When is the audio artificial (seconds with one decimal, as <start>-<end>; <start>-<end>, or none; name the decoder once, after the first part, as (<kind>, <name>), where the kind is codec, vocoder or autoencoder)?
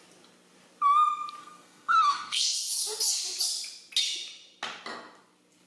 1.4-2.7 (codec, SNAC)